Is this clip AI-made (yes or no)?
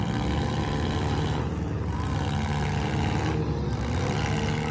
no